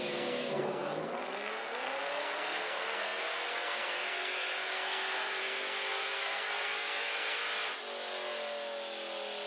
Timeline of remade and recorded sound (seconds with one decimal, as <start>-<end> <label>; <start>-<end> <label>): 0.0-7.4 remade; 7.4-9.5 recorded